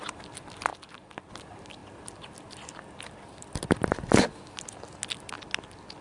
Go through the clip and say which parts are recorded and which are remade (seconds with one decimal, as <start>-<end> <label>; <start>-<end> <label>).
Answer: 0.0-6.0 recorded